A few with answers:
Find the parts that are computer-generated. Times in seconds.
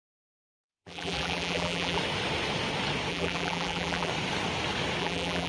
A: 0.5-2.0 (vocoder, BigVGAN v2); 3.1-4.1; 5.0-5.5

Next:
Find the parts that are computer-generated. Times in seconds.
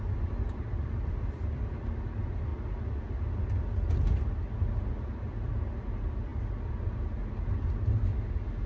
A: none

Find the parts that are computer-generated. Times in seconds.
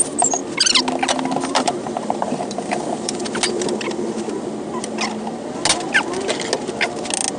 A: 0.0-0.4 (vocoder, BigVGAN v2); 1.5-3.2